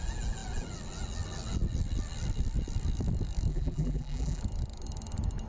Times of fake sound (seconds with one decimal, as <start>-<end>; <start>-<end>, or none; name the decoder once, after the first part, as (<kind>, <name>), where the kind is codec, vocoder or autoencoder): 3.5-4.4 (vocoder, BigVGAN v2)